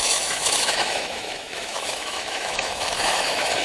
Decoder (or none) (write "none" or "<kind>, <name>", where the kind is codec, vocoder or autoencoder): autoencoder, DAC-VAE